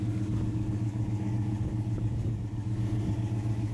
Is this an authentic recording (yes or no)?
no